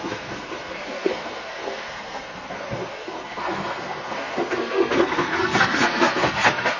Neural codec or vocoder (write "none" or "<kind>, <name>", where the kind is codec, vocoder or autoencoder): codec, SNAC